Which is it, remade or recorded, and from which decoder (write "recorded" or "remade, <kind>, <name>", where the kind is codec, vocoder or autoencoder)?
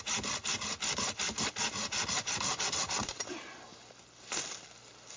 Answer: recorded